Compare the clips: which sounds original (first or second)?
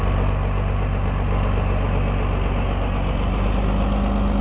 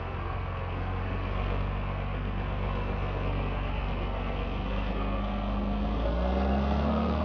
first